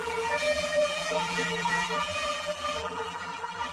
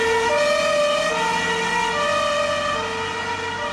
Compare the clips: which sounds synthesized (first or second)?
first